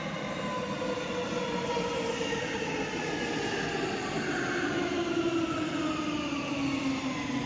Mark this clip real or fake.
real